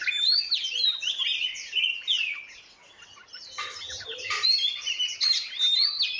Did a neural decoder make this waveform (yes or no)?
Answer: no